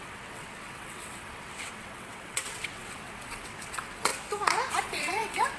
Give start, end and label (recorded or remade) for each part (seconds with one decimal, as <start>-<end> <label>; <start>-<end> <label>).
0.0-4.1 remade; 4.1-4.7 recorded; 4.7-5.6 remade